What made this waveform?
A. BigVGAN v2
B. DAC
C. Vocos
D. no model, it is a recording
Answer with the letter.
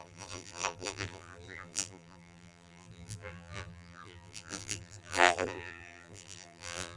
A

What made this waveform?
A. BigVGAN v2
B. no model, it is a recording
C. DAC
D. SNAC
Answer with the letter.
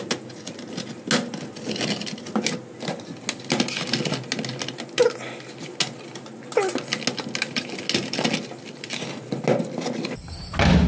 B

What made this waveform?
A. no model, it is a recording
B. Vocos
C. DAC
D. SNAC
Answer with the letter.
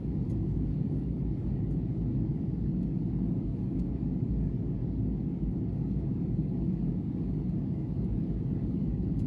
C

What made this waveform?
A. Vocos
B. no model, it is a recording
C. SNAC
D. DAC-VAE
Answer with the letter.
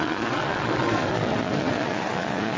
A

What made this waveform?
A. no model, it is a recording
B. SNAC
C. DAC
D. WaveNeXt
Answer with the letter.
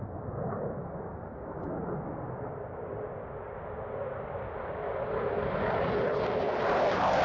A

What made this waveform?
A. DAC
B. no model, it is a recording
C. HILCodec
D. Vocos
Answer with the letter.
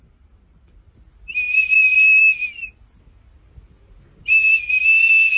B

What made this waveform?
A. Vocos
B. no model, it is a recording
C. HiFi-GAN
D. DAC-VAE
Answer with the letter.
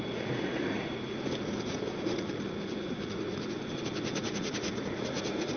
A